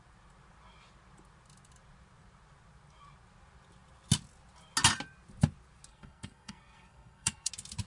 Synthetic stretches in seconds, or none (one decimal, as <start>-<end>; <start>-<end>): 5.9-7.5